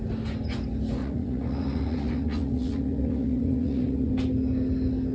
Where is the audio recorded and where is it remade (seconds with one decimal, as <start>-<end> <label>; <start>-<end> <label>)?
0.0-1.0 recorded; 1.0-4.1 remade; 4.1-5.1 recorded

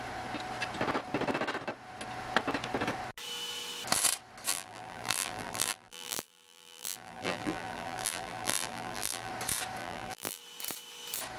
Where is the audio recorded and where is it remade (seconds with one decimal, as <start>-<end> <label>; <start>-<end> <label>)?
0.0-4.5 recorded; 4.5-9.3 remade; 9.3-9.8 recorded; 9.8-10.4 remade; 10.4-11.4 recorded

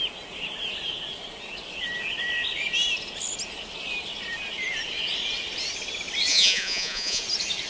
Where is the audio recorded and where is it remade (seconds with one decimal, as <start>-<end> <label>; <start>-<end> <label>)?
0.0-6.3 recorded; 6.3-7.2 remade; 7.2-7.7 recorded

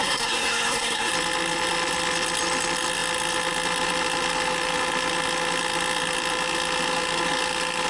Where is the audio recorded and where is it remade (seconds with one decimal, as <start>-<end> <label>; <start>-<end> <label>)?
0.0-1.1 remade; 1.1-7.9 recorded

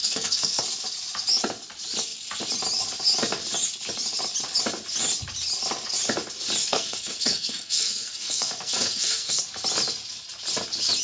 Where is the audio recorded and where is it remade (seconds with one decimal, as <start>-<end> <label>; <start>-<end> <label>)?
0.0-0.6 remade; 0.6-6.6 recorded; 6.6-9.4 remade; 9.4-11.0 recorded

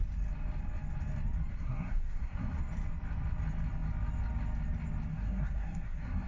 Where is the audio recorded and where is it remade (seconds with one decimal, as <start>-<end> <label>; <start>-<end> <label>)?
0.0-1.5 recorded; 1.5-2.6 remade; 2.6-5.1 recorded; 5.1-6.3 remade

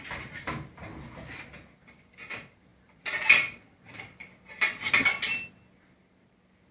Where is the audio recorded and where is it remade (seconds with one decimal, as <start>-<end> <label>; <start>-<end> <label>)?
0.0-6.7 recorded